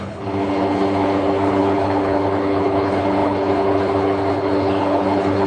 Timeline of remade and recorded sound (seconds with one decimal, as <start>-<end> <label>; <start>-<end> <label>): 0.0-5.5 remade